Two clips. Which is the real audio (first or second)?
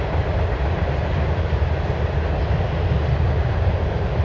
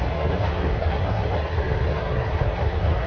first